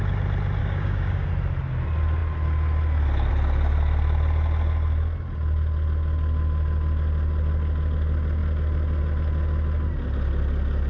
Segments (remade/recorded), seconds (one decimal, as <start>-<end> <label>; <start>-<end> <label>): 0.0-0.6 recorded; 0.6-1.3 remade; 1.3-10.9 recorded